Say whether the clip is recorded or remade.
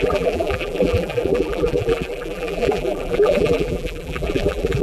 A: remade